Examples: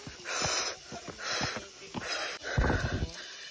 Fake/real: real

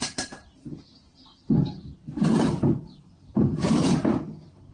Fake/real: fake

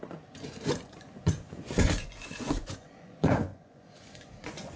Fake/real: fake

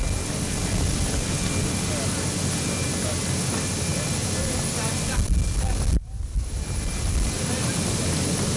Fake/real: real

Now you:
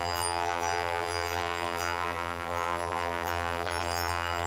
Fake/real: fake